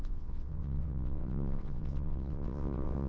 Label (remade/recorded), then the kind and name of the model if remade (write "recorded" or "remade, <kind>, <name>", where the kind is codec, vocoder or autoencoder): remade, vocoder, WaveNeXt